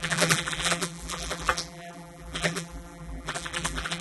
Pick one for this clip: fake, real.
fake